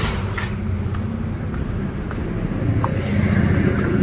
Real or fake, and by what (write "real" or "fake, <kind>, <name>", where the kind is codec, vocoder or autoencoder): real